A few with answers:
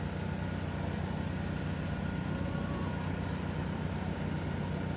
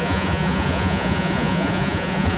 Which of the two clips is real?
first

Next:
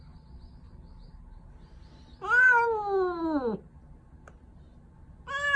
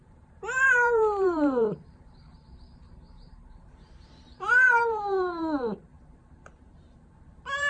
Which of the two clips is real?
first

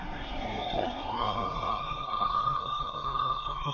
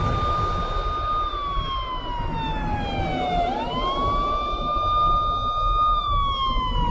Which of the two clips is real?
second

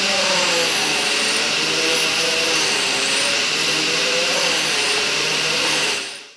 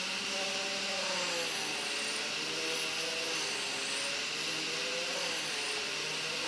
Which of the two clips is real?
second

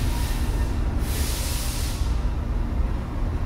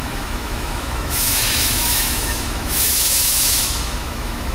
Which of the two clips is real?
first